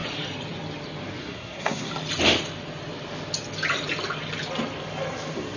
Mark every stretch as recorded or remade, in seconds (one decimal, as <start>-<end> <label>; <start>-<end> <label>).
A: 0.0-1.2 recorded; 1.2-1.9 remade; 1.9-5.6 recorded